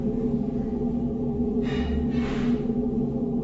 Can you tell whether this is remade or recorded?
recorded